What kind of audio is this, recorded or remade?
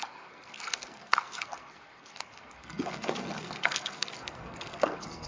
remade